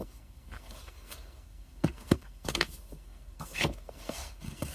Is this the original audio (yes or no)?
no